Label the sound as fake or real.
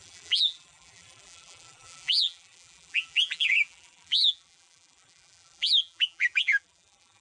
fake